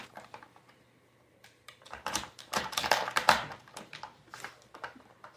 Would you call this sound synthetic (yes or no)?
yes